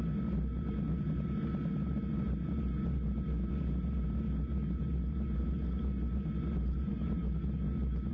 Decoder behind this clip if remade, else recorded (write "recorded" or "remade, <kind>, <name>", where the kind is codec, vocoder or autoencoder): recorded